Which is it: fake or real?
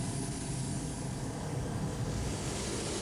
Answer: fake